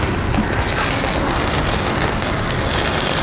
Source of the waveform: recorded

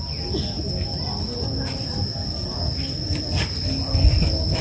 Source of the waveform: recorded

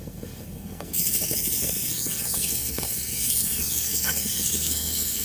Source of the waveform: remade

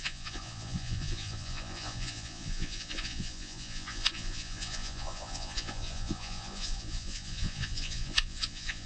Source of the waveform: remade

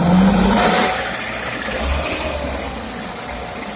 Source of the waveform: recorded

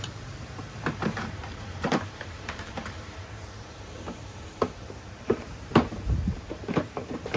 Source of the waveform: remade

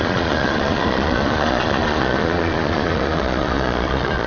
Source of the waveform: remade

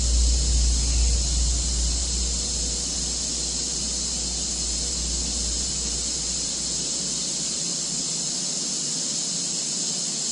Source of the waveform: recorded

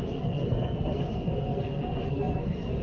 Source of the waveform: remade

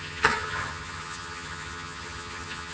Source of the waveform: remade